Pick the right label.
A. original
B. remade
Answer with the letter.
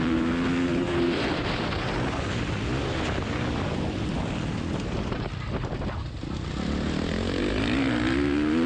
A